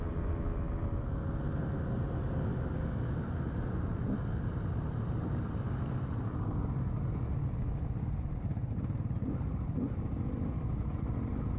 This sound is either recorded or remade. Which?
recorded